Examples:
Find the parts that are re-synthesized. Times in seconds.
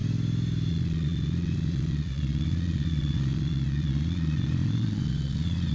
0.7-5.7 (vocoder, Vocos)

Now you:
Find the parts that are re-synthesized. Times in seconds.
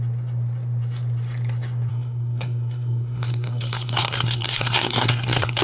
1.9-5.6 (codec, SNAC)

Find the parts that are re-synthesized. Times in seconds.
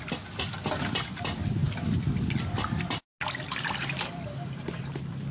none